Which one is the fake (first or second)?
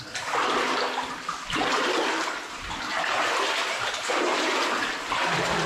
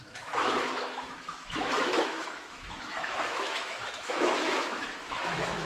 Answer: second